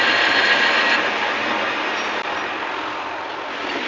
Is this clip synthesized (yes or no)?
no